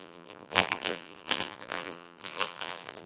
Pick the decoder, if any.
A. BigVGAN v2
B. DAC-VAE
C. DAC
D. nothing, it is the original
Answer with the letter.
A